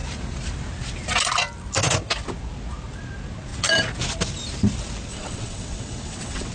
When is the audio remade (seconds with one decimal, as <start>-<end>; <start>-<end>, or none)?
5.1-6.5